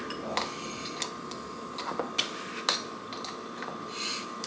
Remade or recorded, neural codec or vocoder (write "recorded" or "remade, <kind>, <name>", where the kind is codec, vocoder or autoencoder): recorded